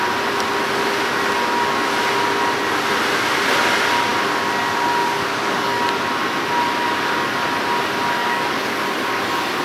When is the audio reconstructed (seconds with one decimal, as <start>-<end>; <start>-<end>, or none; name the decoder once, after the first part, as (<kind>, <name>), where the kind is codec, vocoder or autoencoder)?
5.0-5.8 (codec, DAC); 8.2-9.2